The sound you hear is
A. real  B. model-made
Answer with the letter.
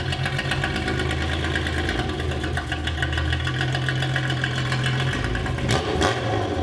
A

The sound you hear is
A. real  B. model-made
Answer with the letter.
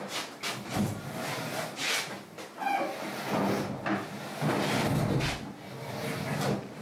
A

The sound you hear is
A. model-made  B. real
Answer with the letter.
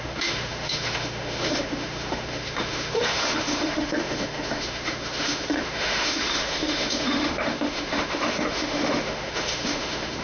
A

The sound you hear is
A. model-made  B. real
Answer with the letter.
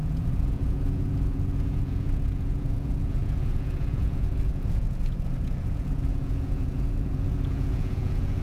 A